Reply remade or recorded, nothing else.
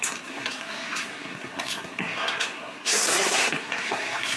remade